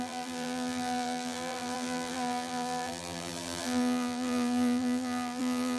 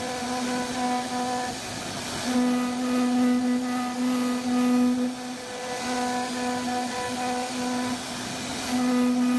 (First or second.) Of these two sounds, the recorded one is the second